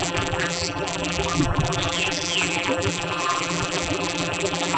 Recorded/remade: remade